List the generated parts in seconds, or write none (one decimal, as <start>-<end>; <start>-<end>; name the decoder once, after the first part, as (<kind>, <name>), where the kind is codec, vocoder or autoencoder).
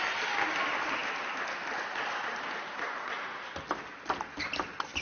none